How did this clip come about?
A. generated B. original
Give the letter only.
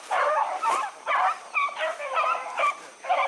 A